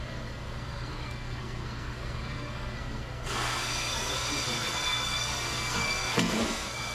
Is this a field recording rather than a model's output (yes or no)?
no